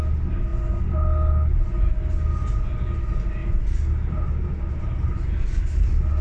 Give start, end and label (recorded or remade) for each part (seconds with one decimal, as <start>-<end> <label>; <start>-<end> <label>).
0.0-6.2 recorded